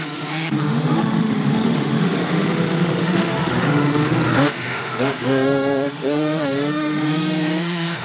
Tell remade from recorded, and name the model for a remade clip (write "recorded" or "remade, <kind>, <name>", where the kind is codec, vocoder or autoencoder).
remade, autoencoder, DAC-VAE